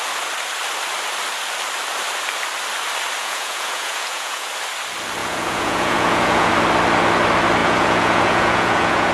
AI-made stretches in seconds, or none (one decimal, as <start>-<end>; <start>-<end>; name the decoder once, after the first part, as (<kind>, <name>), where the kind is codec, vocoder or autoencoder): 3.2-4.5 (vocoder, Vocos); 5.2-6.5; 7.6-9.1